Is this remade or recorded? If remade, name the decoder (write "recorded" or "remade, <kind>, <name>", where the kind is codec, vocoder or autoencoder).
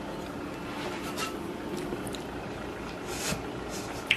remade, vocoder, BigVGAN v2